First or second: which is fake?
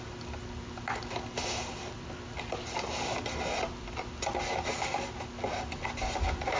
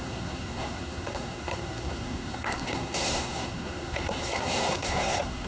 second